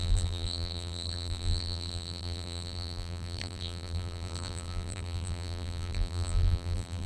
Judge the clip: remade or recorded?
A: remade